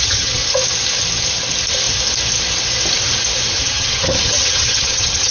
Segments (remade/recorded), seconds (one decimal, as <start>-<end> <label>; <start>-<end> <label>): 0.0-0.4 remade; 0.4-3.6 recorded; 3.6-5.3 remade

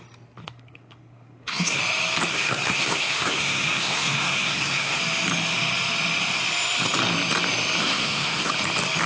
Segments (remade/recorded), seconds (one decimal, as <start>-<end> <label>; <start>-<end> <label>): 0.0-0.4 recorded; 0.4-1.8 remade; 1.8-2.3 recorded; 2.3-5.0 remade; 5.0-7.8 recorded; 7.8-8.5 remade; 8.5-9.1 recorded

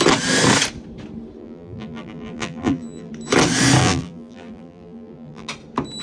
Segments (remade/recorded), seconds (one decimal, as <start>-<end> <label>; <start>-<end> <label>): 0.0-1.4 recorded; 1.4-3.1 remade; 3.1-3.8 recorded; 3.8-5.5 remade; 5.5-6.0 recorded

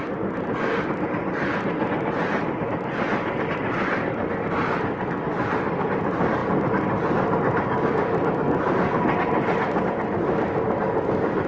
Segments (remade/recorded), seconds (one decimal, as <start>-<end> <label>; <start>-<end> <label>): 0.0-11.5 recorded

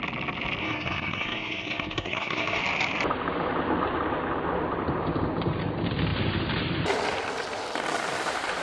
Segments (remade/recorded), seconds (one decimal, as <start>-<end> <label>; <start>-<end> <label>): 0.0-0.6 recorded; 0.6-2.6 remade; 2.6-8.6 recorded

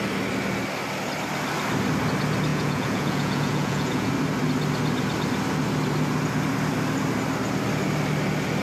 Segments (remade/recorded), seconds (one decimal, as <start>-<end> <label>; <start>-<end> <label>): 0.0-2.5 recorded; 2.5-4.1 remade; 4.1-8.6 recorded

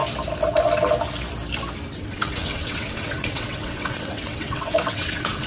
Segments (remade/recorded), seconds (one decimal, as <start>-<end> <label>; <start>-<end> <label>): 0.0-1.9 recorded; 1.9-5.5 remade

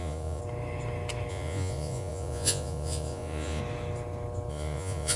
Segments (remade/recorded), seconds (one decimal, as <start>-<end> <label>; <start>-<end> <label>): 0.0-0.4 remade; 0.4-1.3 recorded; 1.3-3.6 remade; 3.6-4.5 recorded; 4.5-5.2 remade